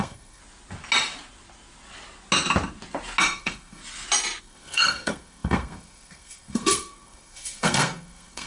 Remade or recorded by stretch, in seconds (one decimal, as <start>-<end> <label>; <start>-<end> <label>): 0.0-0.4 remade; 0.4-3.2 recorded; 3.2-3.8 remade; 3.8-4.4 recorded; 4.4-8.5 remade